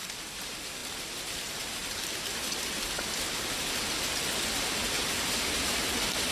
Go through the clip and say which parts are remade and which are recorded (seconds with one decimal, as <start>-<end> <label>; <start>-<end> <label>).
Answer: 0.0-0.8 remade; 0.8-1.4 recorded; 1.4-1.8 remade; 1.8-4.4 recorded; 4.4-6.3 remade